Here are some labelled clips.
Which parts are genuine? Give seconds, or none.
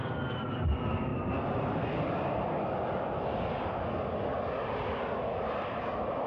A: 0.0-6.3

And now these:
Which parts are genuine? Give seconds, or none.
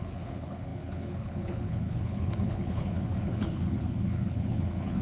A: none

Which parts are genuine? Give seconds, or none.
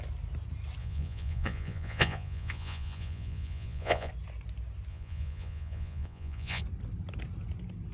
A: 0.0-0.8; 4.1-4.9; 6.6-7.9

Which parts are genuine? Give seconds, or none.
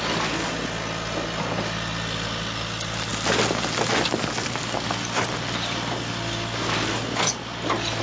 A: 0.0-8.0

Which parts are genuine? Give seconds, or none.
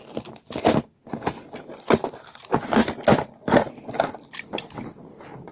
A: 0.0-5.5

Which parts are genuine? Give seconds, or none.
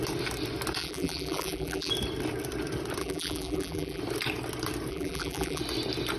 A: 0.0-0.8; 1.9-3.0; 4.0-4.9; 5.6-6.2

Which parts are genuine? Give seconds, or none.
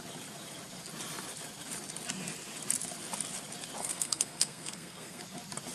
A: 0.0-3.8; 5.2-5.7